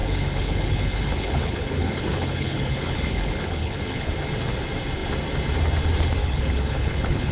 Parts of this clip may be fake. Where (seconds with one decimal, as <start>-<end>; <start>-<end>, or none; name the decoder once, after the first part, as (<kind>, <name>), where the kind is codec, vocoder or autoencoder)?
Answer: 0.0-4.1 (codec, HILCodec); 6.2-7.3